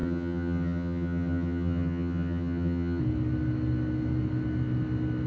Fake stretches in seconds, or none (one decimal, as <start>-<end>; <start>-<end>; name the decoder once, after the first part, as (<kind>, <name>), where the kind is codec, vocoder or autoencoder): 0.0-3.0 (vocoder, HiFi-GAN)